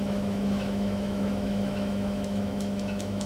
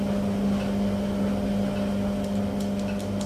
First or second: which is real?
second